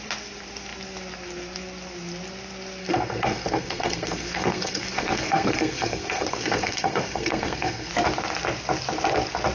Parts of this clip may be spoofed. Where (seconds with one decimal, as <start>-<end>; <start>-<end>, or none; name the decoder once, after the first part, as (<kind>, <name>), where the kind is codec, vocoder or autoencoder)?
2.8-7.9 (codec, SNAC)